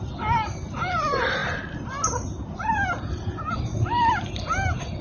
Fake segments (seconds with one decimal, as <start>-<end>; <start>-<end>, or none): none

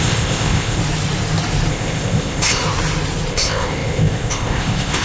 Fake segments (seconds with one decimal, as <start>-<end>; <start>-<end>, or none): 0.0-0.8; 1.7-2.6; 3.3-5.0

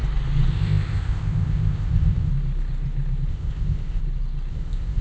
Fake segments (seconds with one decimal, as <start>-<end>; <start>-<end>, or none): 0.5-2.3; 3.3-4.0; 4.5-5.0